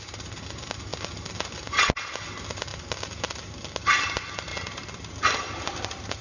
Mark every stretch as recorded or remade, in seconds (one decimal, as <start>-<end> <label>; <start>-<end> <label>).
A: 0.0-6.2 recorded